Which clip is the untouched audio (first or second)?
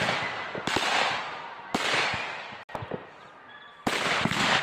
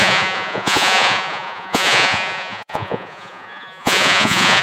first